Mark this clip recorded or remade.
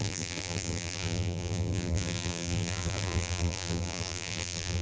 remade